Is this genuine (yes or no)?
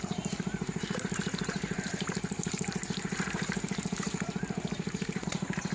no